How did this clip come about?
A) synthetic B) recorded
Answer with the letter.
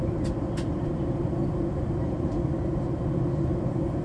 B